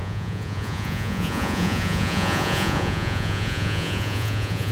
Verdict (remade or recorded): remade